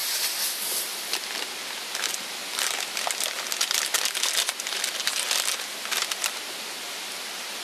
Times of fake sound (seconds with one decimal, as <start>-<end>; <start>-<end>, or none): none